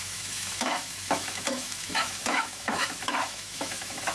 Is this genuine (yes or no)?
no